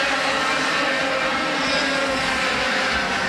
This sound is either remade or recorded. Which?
recorded